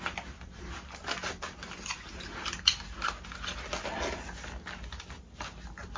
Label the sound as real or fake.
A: real